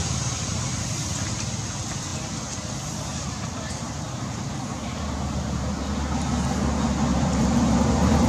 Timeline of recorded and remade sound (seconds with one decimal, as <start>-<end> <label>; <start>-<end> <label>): 0.0-0.6 remade; 0.6-3.1 recorded; 3.1-5.8 remade; 5.8-7.1 recorded; 7.1-8.3 remade